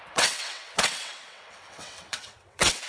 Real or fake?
fake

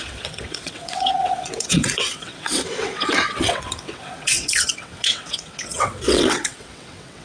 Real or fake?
fake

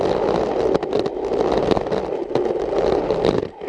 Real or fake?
real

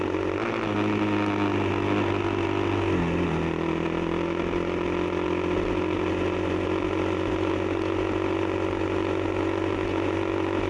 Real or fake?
real